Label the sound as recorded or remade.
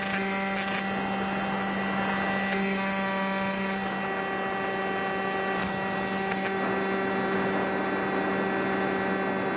recorded